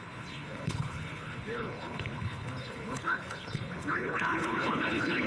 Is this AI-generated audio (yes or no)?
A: yes